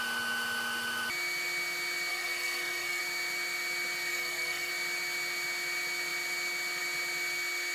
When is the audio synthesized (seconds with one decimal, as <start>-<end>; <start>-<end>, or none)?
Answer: 2.1-3.0; 4.1-4.7